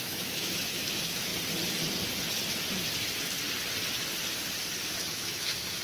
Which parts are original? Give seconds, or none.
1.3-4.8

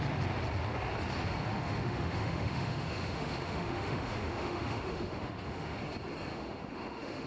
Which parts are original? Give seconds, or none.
0.0-1.5; 5.8-6.3

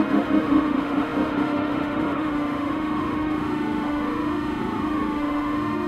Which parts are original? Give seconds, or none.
none

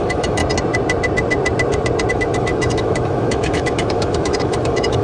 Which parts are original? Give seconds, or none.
0.4-2.1

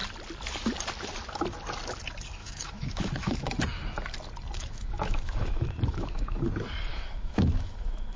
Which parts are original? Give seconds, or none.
0.0-2.4; 3.6-4.6; 6.4-6.9